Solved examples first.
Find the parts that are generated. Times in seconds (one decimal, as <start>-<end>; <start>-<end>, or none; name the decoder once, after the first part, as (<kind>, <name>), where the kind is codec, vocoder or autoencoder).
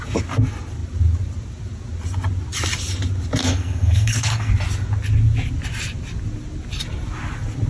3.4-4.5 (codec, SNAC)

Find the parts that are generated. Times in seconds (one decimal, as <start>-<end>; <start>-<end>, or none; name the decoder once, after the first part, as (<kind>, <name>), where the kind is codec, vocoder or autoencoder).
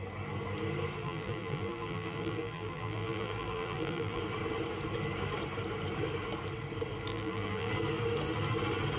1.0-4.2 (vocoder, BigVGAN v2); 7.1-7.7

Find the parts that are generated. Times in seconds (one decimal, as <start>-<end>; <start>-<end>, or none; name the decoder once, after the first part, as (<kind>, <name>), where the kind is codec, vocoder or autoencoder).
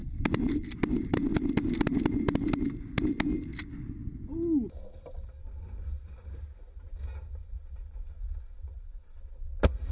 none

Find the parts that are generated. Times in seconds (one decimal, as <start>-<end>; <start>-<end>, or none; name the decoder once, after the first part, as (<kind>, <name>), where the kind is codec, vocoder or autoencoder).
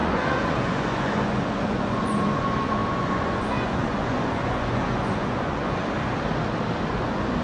0.0-5.8 (vocoder, Vocos); 6.9-7.4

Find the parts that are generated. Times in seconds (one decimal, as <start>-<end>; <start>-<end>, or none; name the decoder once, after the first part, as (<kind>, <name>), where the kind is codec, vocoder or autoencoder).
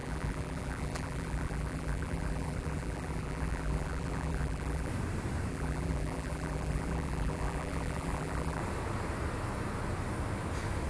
0.0-4.9 (vocoder, BigVGAN v2); 5.5-8.6